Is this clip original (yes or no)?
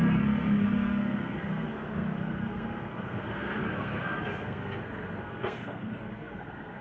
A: no